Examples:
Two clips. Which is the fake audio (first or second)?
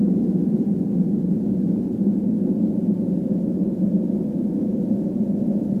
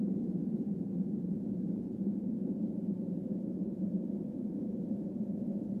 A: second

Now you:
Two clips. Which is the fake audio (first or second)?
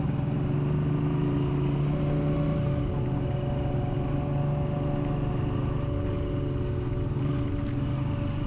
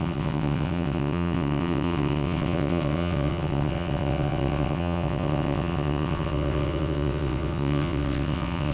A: second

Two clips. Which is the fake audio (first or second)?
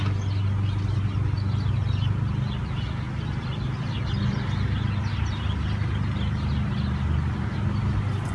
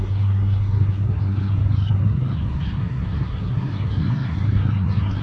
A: second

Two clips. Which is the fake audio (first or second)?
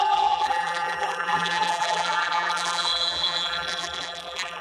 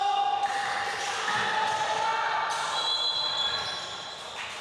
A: first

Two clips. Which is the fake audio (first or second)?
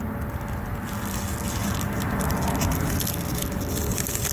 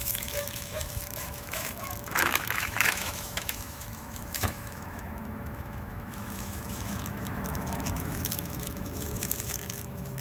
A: second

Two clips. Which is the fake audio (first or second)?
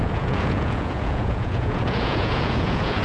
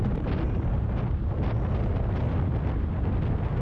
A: first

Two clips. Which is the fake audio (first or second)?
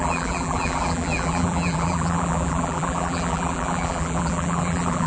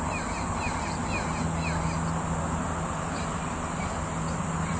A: first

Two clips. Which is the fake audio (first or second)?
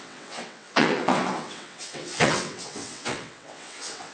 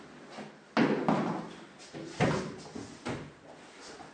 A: first